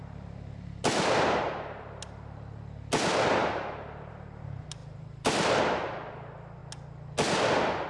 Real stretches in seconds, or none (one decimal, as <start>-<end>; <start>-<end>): 1.4-4.8; 5.6-7.9